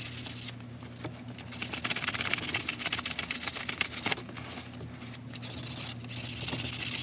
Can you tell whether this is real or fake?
real